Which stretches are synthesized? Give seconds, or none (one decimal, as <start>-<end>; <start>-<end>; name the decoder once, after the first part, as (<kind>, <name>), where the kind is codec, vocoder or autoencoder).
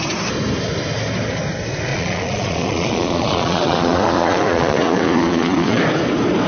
1.9-5.8 (vocoder, Vocos)